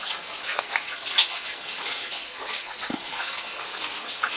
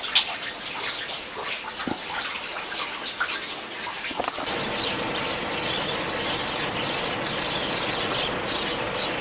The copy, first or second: first